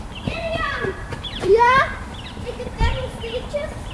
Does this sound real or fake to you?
fake